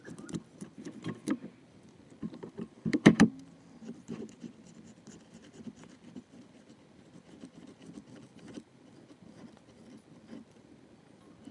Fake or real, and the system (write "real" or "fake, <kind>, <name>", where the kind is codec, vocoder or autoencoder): fake, vocoder, BigVGAN v2